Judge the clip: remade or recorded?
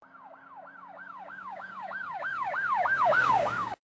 remade